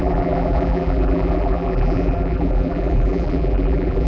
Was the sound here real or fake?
fake